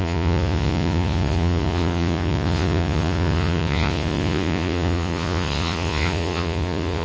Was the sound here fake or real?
fake